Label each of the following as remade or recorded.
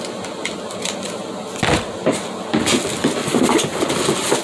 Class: recorded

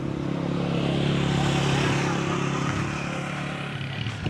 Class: recorded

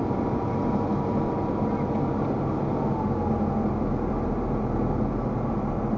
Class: recorded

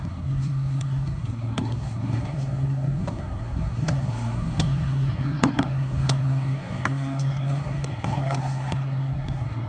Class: remade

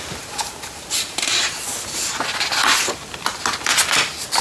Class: recorded